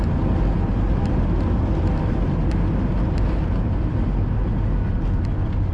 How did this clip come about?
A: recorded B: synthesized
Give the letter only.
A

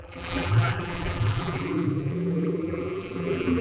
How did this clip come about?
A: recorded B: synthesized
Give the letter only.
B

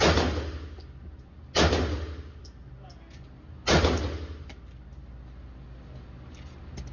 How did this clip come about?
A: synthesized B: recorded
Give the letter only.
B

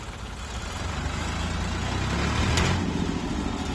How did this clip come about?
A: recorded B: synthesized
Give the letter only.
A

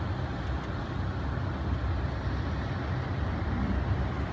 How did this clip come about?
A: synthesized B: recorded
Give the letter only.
B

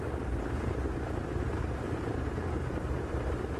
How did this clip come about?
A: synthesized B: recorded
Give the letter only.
A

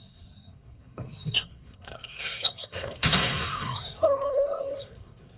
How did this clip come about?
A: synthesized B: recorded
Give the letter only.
A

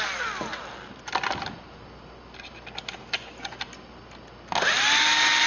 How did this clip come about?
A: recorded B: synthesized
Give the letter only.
A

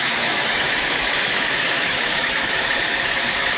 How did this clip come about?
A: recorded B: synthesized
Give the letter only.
B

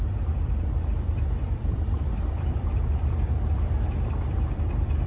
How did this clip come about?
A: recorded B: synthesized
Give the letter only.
B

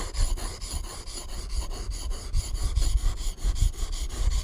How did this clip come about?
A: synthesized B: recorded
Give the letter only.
A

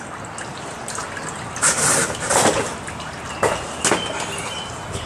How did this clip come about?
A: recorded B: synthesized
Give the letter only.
A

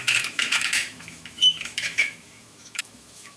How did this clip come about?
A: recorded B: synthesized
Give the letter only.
B